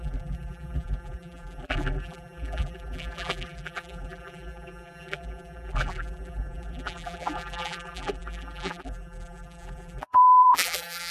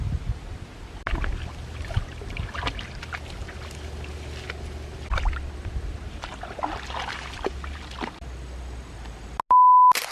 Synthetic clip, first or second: first